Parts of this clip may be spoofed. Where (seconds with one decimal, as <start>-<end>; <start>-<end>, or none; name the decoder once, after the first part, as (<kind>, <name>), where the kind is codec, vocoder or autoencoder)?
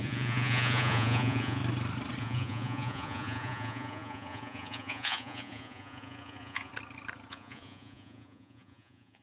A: 0.0-1.6 (vocoder, Vocos); 2.2-6.7; 7.3-9.2